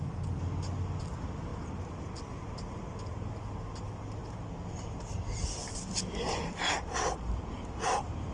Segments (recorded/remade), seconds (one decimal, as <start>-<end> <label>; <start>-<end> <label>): 0.0-8.3 recorded